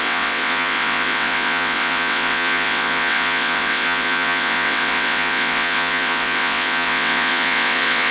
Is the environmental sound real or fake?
fake